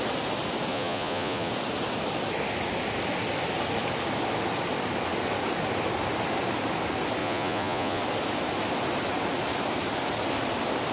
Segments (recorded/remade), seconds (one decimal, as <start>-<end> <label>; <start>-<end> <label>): 0.0-0.7 recorded; 0.7-1.5 remade; 1.5-7.2 recorded; 7.2-8.0 remade; 8.0-10.9 recorded